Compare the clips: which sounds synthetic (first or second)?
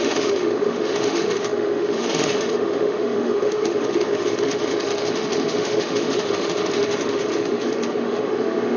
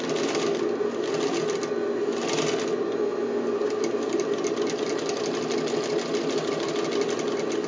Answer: first